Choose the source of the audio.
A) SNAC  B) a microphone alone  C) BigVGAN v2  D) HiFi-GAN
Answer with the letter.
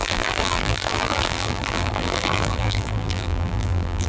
C